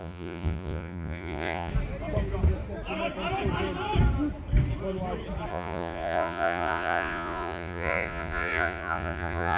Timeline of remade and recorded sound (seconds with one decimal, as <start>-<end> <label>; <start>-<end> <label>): 0.0-1.7 remade; 1.7-5.5 recorded; 5.5-9.6 remade